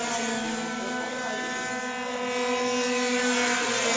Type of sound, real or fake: real